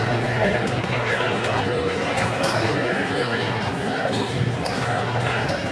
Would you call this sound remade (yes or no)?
yes